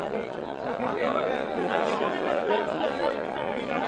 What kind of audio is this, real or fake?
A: fake